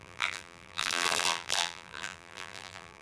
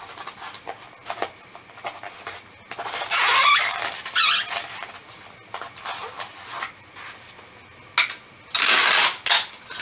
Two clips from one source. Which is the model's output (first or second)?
first